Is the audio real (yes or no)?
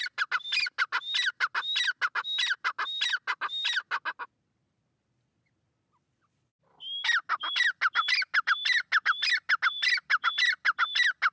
yes